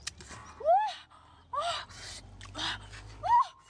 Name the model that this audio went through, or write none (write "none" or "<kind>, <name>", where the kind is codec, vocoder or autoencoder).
none